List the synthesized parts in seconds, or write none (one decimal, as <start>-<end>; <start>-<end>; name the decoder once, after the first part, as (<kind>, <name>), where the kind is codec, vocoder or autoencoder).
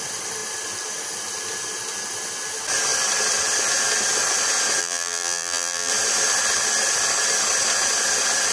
4.8-5.9 (vocoder, BigVGAN v2)